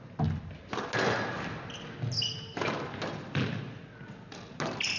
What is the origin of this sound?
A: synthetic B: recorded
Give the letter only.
B